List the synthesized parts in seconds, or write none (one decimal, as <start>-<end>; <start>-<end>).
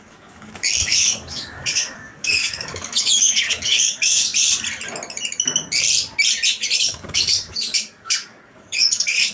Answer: 0.0-4.3; 6.8-9.3